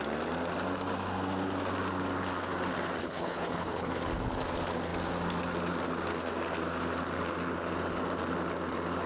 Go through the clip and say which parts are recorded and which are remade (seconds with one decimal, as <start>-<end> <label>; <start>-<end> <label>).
0.0-3.0 recorded; 3.0-3.9 remade; 3.9-9.1 recorded